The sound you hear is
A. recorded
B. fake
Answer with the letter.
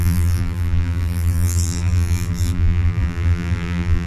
B